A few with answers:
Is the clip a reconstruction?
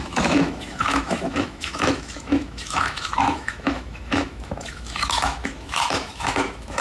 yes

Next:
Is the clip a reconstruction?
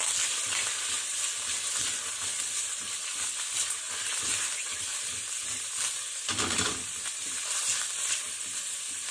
no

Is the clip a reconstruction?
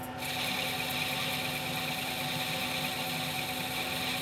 no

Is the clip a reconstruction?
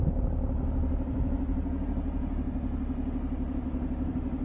no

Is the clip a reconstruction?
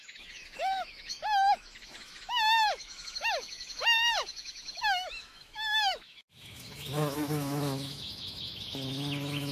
yes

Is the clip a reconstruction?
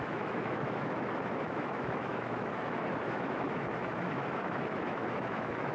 yes